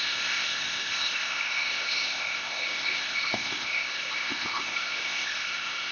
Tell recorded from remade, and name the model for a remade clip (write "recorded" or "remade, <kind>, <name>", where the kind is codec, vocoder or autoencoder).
remade, codec, ZipCodec